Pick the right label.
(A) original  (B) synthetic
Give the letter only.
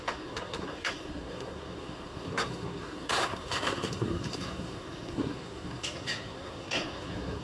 B